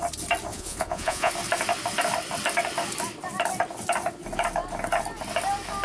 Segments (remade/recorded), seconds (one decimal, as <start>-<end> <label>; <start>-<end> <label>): 0.0-0.5 recorded; 0.5-1.3 remade; 1.3-5.8 recorded